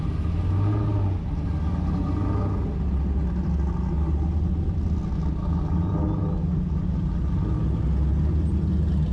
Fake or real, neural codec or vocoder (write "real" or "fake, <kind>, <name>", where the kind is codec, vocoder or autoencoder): real